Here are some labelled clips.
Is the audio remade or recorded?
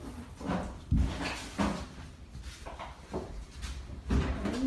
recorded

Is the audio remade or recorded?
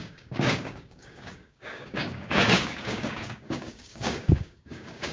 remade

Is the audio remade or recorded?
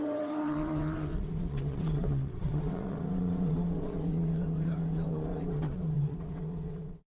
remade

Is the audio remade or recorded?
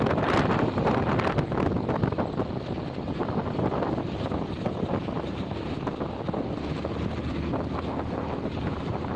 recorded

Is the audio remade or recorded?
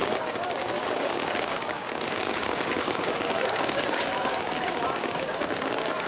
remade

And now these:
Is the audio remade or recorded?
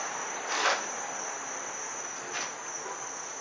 recorded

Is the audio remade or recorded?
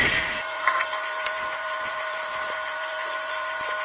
remade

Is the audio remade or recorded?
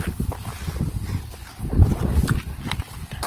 remade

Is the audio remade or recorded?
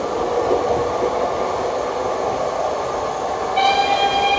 recorded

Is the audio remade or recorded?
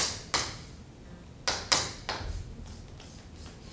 recorded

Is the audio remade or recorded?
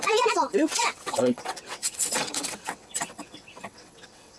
remade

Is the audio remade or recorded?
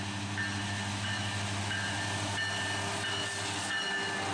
recorded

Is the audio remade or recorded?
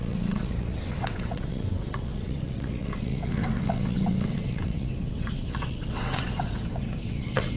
remade